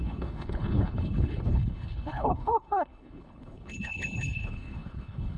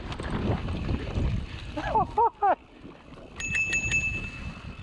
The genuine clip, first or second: second